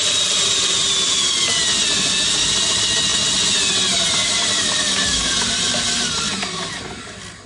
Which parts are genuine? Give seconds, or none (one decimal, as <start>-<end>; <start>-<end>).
0.0-7.5